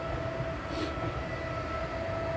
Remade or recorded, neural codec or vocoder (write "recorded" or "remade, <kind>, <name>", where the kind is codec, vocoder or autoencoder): recorded